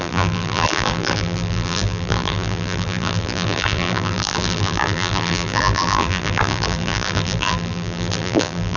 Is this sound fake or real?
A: fake